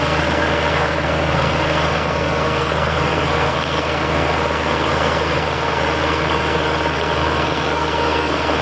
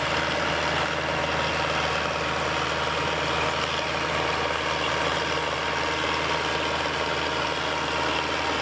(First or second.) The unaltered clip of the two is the second